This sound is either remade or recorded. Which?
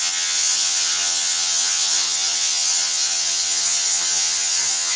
remade